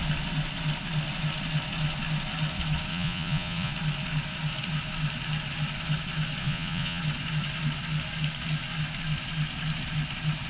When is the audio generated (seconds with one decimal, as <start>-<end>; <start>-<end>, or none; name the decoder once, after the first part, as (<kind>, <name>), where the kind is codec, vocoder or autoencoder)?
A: 2.9-3.7 (vocoder, Vocos); 6.4-7.0